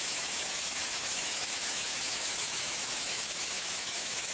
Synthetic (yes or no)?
yes